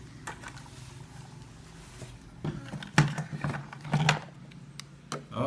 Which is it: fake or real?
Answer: real